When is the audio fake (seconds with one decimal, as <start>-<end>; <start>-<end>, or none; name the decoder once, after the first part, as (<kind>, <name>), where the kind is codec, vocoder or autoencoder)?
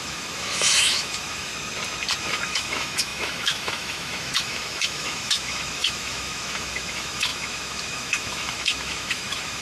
0.0-1.5 (autoencoder, DAC-VAE); 2.2-9.6